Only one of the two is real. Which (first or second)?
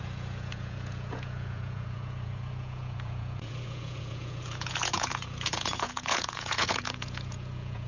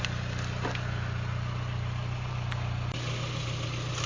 second